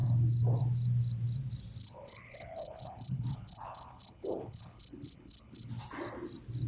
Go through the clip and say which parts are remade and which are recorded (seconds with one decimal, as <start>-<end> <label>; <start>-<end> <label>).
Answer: 0.0-1.8 recorded; 1.8-5.8 remade; 5.8-6.7 recorded